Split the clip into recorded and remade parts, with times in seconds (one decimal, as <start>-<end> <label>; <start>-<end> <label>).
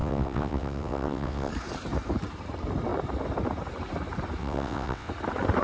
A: 0.0-1.5 remade; 1.5-4.4 recorded; 4.4-5.1 remade; 5.1-5.6 recorded